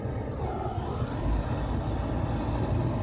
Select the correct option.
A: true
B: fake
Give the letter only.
A